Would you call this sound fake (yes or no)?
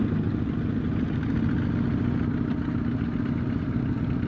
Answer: no